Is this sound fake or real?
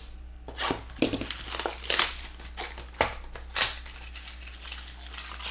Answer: real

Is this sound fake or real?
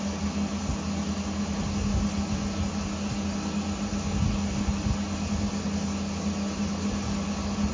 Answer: real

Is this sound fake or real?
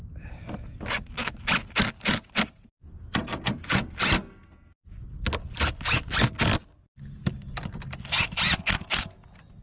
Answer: real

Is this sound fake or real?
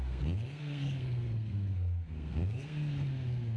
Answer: fake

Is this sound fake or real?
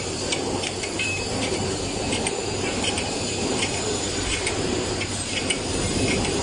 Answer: fake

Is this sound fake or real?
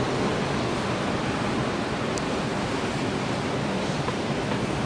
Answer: real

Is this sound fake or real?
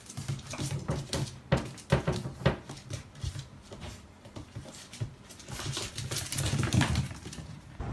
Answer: real